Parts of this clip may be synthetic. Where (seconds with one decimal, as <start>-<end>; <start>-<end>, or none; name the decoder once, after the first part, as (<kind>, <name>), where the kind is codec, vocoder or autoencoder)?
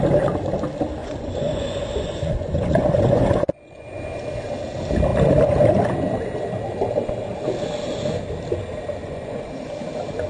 1.0-4.2 (vocoder, Vocos); 9.0-9.5